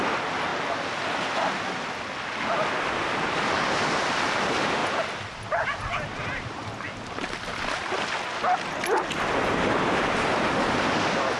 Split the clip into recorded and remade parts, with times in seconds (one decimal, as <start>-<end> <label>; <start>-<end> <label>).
0.0-11.4 recorded